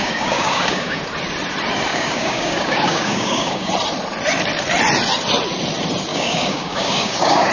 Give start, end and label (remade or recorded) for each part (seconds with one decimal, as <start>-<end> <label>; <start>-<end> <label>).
0.0-1.0 remade; 1.0-1.9 recorded; 1.9-3.7 remade; 3.7-6.1 recorded; 6.1-7.5 remade